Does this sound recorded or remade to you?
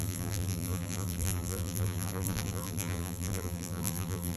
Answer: remade